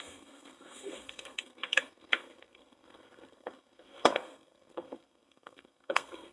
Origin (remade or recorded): remade